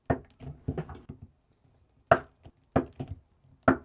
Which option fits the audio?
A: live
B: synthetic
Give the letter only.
A